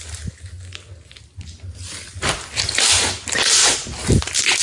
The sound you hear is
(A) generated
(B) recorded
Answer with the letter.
B